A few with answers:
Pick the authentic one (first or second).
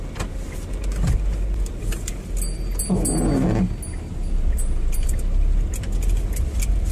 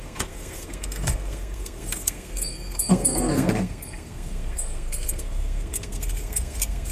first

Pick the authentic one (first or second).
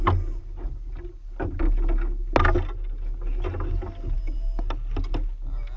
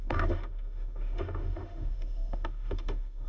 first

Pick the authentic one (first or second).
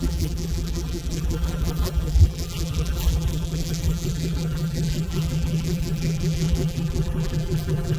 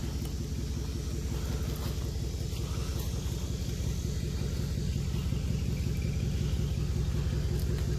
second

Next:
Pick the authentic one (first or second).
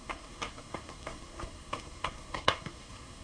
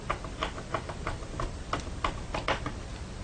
second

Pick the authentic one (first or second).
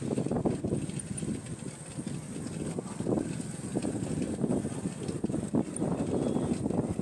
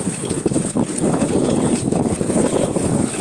first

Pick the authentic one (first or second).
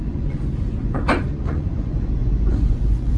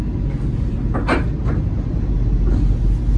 second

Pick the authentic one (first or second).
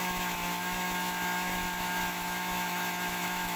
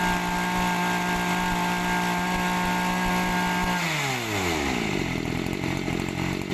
second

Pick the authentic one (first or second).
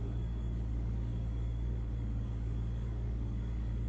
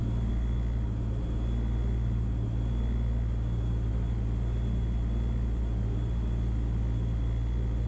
second